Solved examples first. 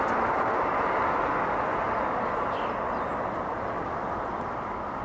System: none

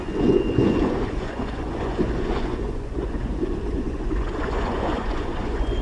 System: vocoder, Vocos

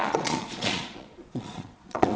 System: vocoder, Vocos